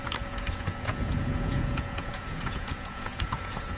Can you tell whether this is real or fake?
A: fake